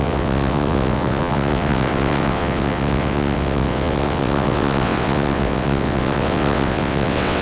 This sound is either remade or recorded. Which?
remade